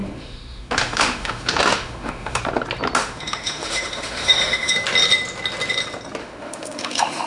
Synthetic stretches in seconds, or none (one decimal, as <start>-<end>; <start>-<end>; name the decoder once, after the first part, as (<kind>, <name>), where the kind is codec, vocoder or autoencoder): 0.0-2.4 (autoencoder, DAC-VAE); 3.0-4.7; 6.2-7.3